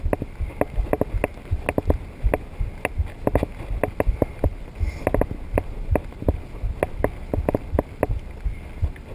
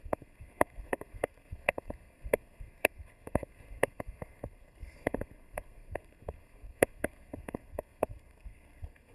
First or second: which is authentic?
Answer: first